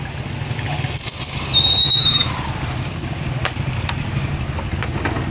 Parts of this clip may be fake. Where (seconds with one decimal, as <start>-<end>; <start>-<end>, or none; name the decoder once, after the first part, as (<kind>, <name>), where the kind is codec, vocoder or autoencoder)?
1.8-2.3 (autoencoder, DAC-VAE)